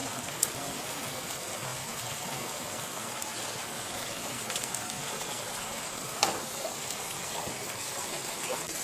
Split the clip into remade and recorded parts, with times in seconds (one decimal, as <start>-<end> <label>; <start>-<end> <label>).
0.0-8.8 remade